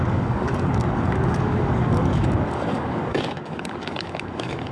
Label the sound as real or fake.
fake